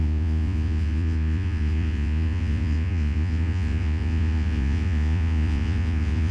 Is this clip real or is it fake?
fake